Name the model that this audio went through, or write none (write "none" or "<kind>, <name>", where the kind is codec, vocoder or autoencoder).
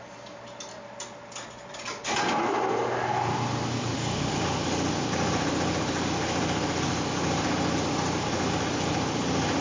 none